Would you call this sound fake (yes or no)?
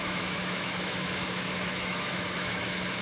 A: yes